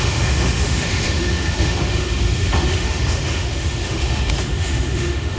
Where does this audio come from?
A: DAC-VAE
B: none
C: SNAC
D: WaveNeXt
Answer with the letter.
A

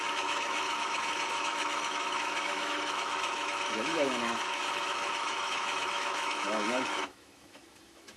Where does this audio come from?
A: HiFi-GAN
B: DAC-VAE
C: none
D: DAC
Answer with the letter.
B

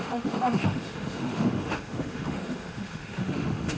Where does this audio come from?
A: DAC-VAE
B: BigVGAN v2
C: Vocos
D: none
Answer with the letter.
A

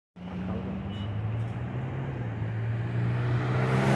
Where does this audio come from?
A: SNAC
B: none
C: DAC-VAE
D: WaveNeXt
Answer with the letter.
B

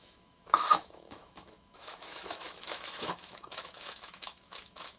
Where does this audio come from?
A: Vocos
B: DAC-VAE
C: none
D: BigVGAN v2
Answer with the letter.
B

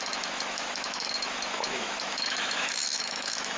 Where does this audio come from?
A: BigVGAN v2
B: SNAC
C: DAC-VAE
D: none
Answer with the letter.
C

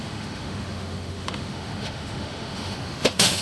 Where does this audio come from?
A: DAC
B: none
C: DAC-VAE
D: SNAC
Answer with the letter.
C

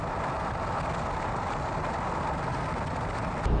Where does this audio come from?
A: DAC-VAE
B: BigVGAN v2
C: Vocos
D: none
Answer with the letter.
D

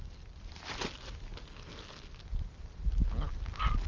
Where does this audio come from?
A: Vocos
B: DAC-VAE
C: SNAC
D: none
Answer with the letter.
D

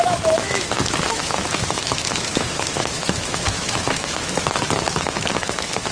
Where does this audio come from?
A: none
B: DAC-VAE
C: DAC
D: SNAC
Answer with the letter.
B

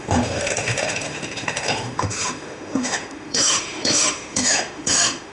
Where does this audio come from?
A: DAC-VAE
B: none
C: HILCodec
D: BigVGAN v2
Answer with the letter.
A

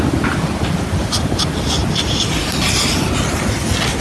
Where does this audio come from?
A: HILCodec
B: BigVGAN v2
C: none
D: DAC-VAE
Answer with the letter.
C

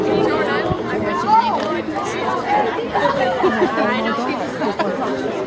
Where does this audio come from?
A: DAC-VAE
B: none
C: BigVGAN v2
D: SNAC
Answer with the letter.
B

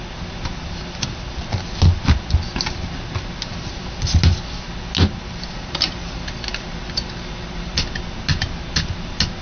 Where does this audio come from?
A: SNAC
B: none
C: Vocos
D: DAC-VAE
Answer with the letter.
B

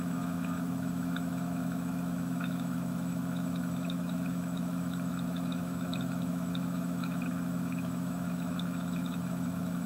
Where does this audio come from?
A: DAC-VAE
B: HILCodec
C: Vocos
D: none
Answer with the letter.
A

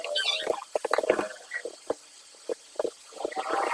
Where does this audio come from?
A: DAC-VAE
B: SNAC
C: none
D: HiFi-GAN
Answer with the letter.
C